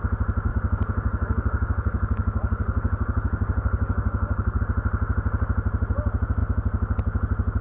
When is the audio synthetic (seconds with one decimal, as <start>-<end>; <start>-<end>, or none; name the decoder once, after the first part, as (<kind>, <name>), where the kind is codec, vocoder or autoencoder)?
0.5-4.6 (codec, DAC)